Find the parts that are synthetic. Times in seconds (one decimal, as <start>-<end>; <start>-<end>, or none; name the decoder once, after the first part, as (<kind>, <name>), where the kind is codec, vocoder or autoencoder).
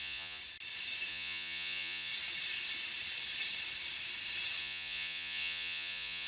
0.0-0.4 (vocoder, Vocos); 1.1-2.1; 4.6-6.3